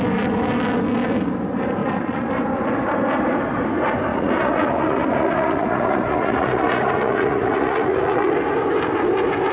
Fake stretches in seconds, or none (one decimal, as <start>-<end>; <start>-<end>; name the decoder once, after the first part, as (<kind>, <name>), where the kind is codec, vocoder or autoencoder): 1.8-2.4 (vocoder, Vocos); 4.1-8.3

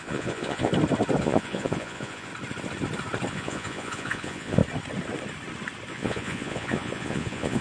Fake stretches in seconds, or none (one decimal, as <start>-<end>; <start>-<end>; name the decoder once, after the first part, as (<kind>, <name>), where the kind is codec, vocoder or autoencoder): 0.0-0.7 (vocoder, Vocos); 1.2-2.3; 3.3-4.6; 5.9-7.6

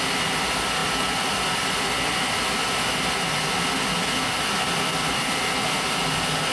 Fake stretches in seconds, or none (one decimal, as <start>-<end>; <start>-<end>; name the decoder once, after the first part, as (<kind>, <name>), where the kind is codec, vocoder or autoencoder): none